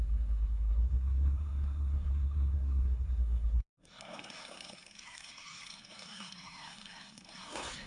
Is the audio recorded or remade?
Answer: remade